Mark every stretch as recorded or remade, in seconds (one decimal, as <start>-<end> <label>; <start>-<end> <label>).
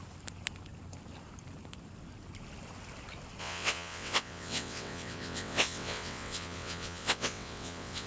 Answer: 0.0-3.4 recorded; 3.4-8.1 remade